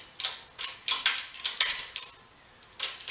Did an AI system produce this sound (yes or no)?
no